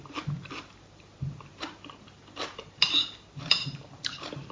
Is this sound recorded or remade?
remade